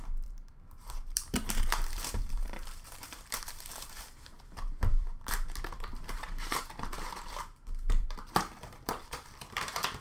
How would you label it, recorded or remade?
remade